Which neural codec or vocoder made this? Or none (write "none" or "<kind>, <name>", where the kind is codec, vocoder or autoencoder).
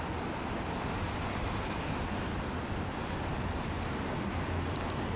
none